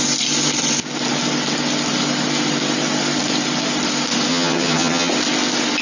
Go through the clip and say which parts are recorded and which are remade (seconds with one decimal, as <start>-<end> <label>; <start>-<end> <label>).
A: 0.0-4.3 recorded; 4.3-5.1 remade; 5.1-5.8 recorded